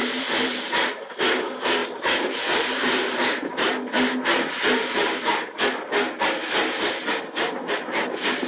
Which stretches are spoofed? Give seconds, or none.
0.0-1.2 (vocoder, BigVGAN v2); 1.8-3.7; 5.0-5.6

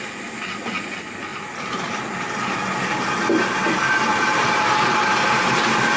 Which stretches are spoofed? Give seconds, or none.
5.1-5.6 (vocoder, BigVGAN v2)

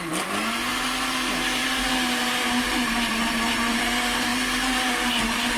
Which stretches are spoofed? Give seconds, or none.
1.6-3.8 (vocoder, BigVGAN v2)

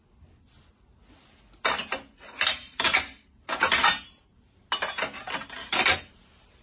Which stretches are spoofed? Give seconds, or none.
2.5-4.6 (vocoder, BigVGAN v2); 5.7-6.6

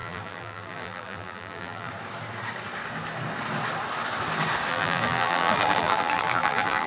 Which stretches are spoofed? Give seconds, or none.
0.0-1.9 (vocoder, BigVGAN v2); 4.7-6.9

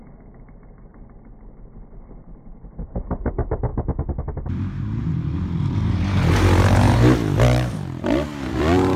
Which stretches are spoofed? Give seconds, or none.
0.9-3.3 (vocoder, BigVGAN v2); 7.2-8.6